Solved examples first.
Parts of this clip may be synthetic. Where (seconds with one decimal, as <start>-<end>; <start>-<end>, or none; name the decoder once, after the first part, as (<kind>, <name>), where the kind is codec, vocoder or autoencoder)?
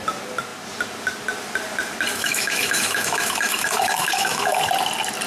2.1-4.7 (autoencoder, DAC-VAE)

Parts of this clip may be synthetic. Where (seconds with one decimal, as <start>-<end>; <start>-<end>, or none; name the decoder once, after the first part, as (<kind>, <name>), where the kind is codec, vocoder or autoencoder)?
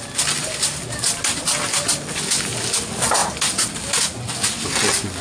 none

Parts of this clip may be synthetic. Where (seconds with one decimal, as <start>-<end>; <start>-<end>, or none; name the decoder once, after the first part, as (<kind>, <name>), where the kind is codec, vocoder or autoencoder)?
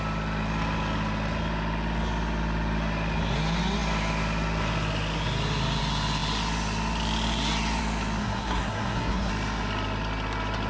8.2-9.3 (codec, SNAC)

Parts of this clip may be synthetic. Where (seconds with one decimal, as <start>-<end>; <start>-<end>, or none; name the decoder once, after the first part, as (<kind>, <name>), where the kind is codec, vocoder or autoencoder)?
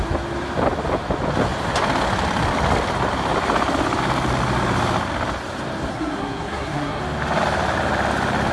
5.9-7.0 (codec, SNAC)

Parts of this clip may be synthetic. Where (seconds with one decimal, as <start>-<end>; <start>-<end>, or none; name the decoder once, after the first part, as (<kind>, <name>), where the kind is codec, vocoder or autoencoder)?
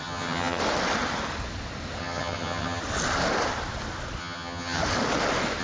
0.0-0.6 (vocoder, HiFi-GAN); 2.0-2.8; 4.2-4.8